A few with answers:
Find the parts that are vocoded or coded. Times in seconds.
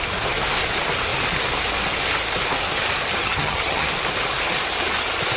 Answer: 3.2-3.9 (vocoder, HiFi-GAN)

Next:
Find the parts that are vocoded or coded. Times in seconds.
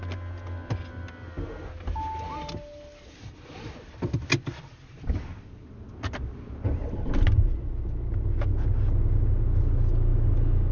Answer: none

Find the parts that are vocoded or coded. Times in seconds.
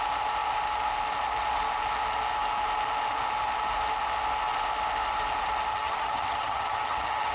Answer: 5.7-7.3 (vocoder, HiFi-GAN)